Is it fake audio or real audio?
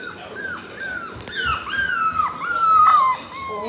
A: real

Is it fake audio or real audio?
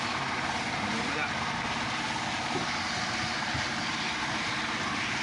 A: real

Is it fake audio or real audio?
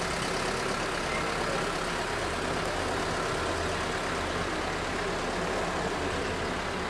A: real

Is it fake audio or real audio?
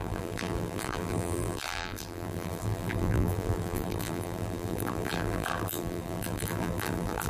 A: fake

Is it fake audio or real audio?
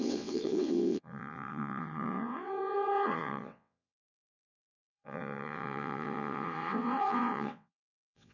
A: fake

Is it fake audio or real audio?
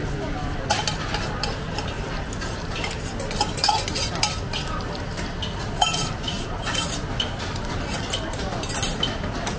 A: real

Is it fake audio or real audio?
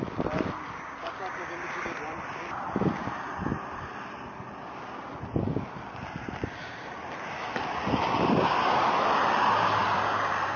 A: real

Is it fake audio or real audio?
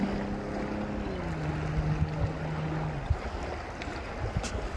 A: real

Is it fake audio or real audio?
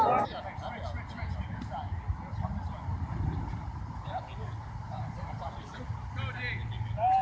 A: real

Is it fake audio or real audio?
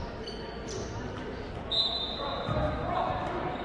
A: real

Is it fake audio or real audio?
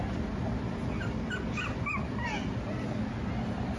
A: real